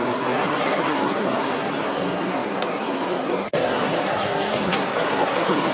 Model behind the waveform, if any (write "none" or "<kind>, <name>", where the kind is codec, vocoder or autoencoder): codec, SNAC